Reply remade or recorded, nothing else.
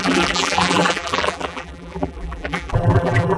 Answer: remade